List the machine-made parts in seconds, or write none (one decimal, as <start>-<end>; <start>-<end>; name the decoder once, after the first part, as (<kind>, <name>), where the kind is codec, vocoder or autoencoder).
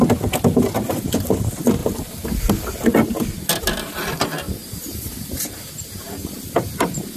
none